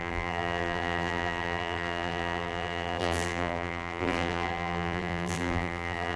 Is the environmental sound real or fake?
fake